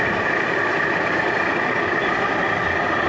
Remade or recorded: recorded